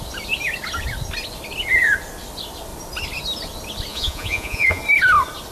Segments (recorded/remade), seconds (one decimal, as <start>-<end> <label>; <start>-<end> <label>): 0.0-3.9 recorded; 3.9-4.8 remade; 4.8-5.5 recorded

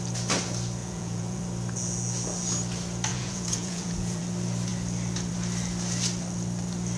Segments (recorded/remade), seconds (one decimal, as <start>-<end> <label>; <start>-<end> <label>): 0.0-0.8 recorded; 0.8-1.4 remade; 1.4-3.1 recorded; 3.1-4.2 remade; 4.2-7.0 recorded

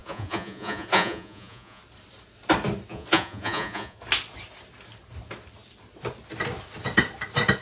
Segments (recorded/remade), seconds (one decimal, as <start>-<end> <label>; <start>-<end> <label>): 0.0-1.8 remade; 1.8-2.9 recorded; 2.9-4.0 remade; 4.0-7.6 recorded

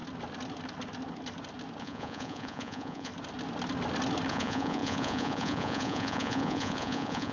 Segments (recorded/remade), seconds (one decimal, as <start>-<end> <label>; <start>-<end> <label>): 0.0-1.8 recorded; 1.8-3.1 remade; 3.1-4.3 recorded; 4.3-7.3 remade

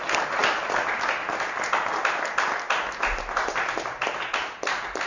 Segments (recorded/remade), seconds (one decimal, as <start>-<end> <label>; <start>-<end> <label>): 0.0-5.1 recorded

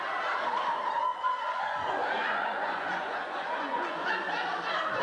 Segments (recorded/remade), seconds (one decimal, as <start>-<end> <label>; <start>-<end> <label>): 0.0-1.1 recorded; 1.1-4.1 remade; 4.1-5.0 recorded

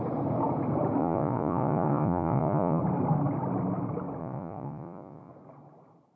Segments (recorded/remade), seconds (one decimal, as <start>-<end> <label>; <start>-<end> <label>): 0.0-1.0 recorded; 1.0-2.8 remade; 2.8-4.2 recorded; 4.2-5.3 remade; 5.3-6.2 recorded

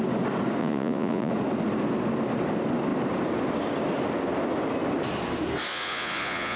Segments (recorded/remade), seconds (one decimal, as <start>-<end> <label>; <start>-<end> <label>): 0.0-0.6 recorded; 0.6-1.3 remade; 1.3-5.7 recorded; 5.7-6.6 remade